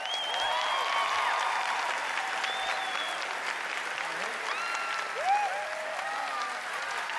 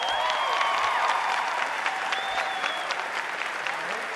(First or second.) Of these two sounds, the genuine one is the first